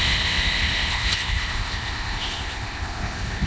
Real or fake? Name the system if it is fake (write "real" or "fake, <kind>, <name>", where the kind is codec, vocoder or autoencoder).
fake, codec, ZipCodec